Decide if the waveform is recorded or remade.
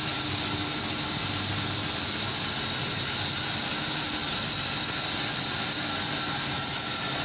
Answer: recorded